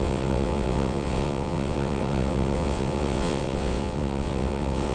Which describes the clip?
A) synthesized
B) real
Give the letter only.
A